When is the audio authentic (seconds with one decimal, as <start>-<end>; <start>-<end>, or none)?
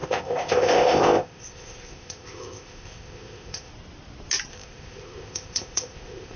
3.7-4.5